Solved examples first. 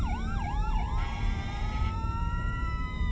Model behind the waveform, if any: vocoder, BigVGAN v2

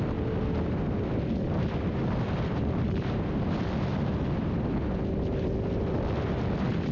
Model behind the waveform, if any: none